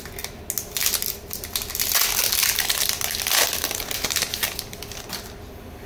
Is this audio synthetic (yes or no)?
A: no